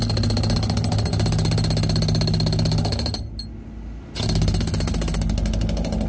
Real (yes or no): yes